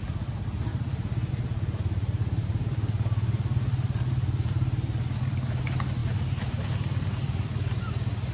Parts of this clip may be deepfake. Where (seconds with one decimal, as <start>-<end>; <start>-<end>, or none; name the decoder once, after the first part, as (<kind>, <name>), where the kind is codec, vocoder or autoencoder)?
0.7-1.3 (vocoder, BigVGAN v2); 2.2-5.6; 6.0-7.9